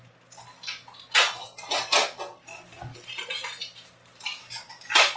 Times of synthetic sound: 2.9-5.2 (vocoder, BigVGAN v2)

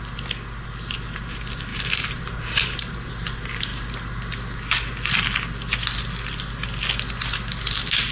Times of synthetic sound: 1.7-3.1 (vocoder, BigVGAN v2)

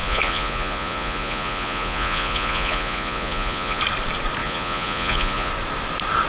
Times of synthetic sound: 0.0-3.8 (vocoder, Vocos); 4.4-5.5

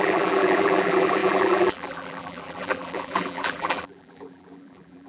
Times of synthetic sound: 0.0-5.1 (vocoder, BigVGAN v2)

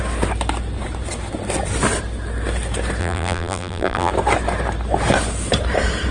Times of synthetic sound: 3.0-4.1 (vocoder, BigVGAN v2)

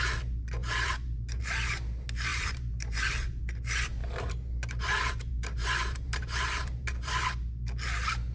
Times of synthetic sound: 0.6-1.4 (vocoder, BigVGAN v2); 2.3-3.4; 4.0-7.2

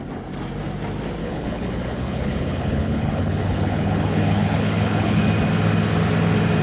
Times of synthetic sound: 1.2-5.2 (codec, HILCodec)

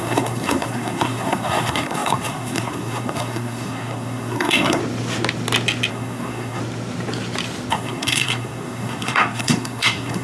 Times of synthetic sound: 0.0-4.8 (codec, SNAC); 5.9-6.6; 7.7-10.2